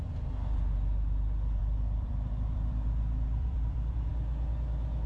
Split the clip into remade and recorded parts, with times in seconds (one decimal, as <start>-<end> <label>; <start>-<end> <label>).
0.0-1.6 recorded; 1.6-4.1 remade; 4.1-5.1 recorded